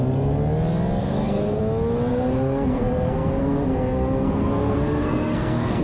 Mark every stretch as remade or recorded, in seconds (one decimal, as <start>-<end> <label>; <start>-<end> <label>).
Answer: 0.0-1.0 recorded; 1.0-1.6 remade; 1.6-2.1 recorded; 2.1-5.8 remade